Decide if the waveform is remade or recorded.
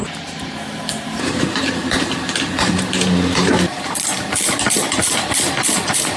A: remade